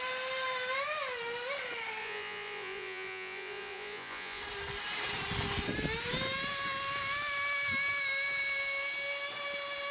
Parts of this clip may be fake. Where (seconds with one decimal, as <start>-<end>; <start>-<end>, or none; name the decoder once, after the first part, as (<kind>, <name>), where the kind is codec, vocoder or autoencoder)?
2.0-4.4 (vocoder, Vocos)